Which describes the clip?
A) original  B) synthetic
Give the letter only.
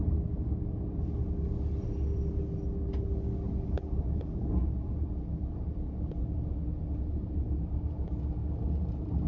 A